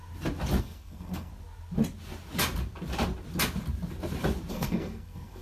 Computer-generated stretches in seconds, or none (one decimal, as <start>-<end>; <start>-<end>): 0.6-1.3; 4.5-5.4